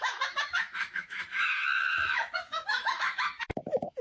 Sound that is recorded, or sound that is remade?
remade